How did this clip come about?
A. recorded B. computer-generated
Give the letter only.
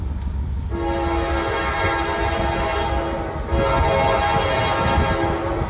A